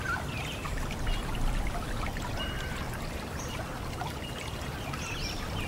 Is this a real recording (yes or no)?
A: yes